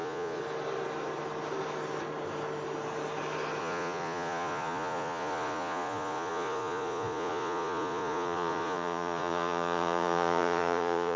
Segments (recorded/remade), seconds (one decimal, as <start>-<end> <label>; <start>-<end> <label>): 0.0-0.4 remade; 0.4-3.6 recorded; 3.6-11.2 remade